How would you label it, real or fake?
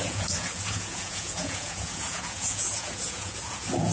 fake